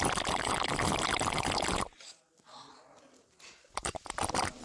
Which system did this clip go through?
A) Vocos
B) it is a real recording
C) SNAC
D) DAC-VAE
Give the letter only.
B